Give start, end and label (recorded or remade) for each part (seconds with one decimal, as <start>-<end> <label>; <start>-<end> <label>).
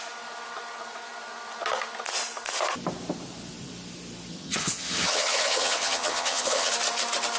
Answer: 0.0-4.3 recorded; 4.3-6.7 remade; 6.7-7.4 recorded